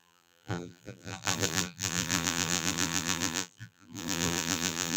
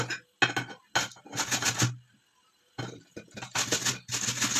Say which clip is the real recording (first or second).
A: second